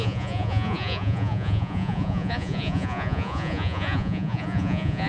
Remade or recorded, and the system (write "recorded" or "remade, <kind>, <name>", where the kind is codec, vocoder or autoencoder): remade, vocoder, Vocos